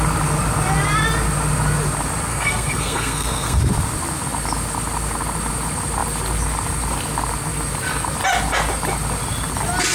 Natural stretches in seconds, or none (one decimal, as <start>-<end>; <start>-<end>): 0.0-2.3; 3.6-9.9